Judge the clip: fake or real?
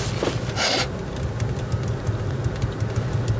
real